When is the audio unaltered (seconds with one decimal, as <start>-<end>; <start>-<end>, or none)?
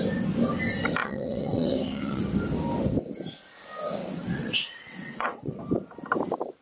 0.0-1.0; 2.2-4.0; 5.6-6.6